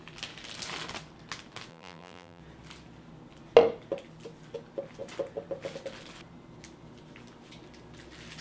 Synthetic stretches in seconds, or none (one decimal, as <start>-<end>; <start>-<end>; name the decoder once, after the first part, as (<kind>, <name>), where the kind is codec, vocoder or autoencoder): 1.7-2.4 (vocoder, BigVGAN v2)